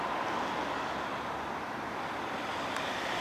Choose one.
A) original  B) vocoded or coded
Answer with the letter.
A